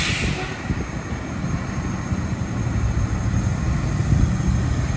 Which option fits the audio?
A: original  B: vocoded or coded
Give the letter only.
A